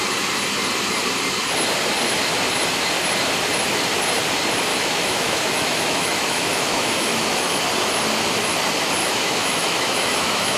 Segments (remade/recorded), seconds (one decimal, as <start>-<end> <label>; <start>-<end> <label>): 0.0-4.7 recorded; 4.7-7.6 remade; 7.6-9.0 recorded; 9.0-10.6 remade